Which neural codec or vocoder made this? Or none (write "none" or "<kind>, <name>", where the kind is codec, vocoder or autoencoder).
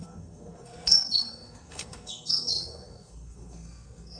codec, SNAC